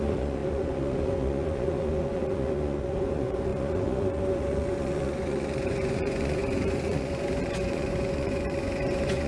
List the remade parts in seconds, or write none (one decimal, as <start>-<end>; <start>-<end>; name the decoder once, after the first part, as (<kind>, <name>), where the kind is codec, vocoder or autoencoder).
0.0-9.3 (vocoder, Vocos)